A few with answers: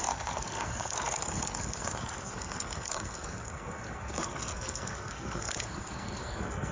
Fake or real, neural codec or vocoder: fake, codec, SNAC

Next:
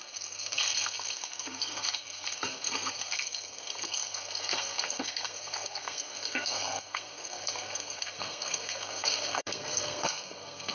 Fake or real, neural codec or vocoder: fake, codec, SNAC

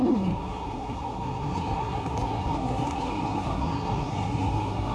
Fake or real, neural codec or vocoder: fake, codec, SNAC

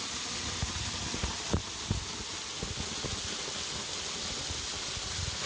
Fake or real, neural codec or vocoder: real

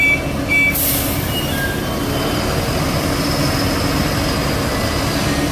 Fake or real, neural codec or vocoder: real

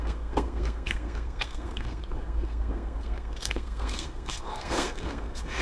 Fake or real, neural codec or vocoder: fake, codec, SNAC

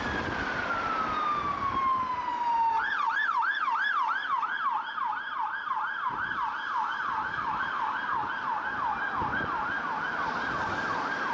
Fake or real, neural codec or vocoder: real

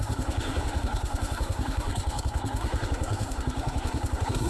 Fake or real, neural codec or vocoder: fake, codec, SNAC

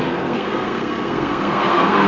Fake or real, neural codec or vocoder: fake, codec, SNAC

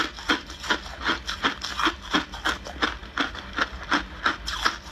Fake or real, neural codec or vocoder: real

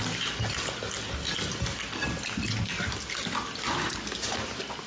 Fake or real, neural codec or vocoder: real